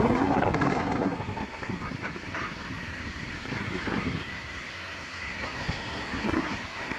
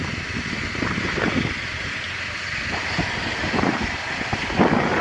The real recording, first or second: second